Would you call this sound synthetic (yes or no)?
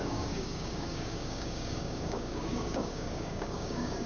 yes